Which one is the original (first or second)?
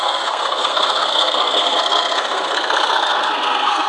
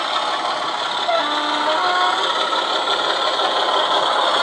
second